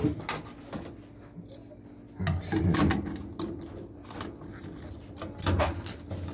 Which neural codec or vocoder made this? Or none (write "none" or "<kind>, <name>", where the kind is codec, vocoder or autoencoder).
none